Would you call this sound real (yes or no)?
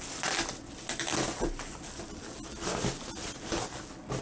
yes